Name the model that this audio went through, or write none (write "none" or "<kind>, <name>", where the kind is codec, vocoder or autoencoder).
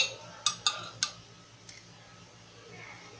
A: none